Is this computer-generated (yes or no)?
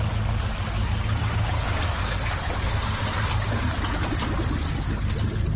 no